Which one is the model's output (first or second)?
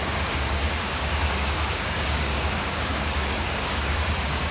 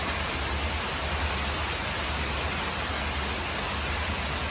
first